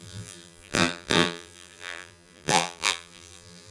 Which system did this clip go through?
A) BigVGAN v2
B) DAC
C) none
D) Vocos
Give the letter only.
A